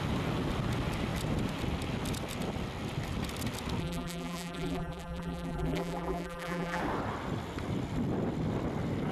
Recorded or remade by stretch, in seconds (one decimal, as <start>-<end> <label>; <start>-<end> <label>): 0.0-3.8 recorded; 3.8-6.8 remade; 6.8-9.1 recorded